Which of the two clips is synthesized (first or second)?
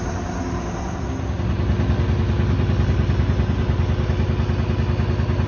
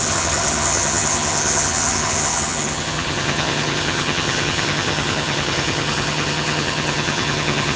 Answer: second